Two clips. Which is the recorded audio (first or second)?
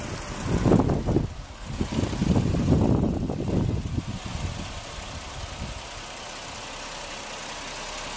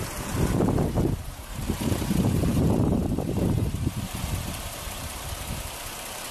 first